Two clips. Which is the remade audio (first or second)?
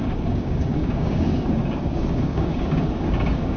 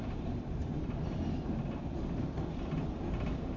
first